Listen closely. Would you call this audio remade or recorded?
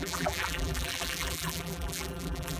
remade